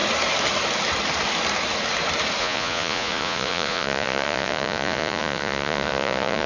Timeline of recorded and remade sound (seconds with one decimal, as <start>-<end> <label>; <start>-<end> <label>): 0.0-2.4 recorded; 2.4-6.5 remade